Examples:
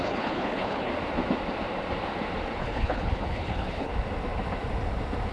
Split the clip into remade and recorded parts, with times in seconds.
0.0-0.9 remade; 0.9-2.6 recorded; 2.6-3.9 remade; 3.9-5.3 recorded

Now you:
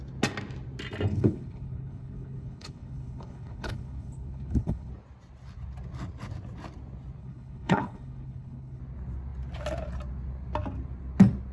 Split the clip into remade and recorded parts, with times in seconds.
0.0-1.1 recorded; 1.1-4.9 remade; 4.9-7.2 recorded; 7.2-8.8 remade; 8.8-11.5 recorded